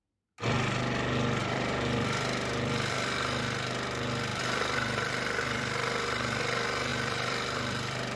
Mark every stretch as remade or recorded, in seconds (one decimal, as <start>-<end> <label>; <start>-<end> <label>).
0.0-1.4 recorded; 1.4-3.4 remade; 3.4-4.3 recorded; 4.3-6.4 remade; 6.4-6.9 recorded; 6.9-8.2 remade